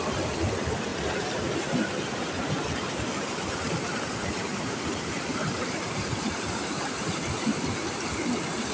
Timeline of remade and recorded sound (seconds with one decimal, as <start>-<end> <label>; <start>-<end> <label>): 0.0-4.5 recorded; 4.5-7.9 remade; 7.9-8.7 recorded